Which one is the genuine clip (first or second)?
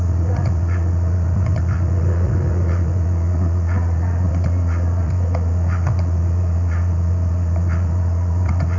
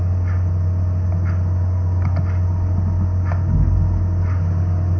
second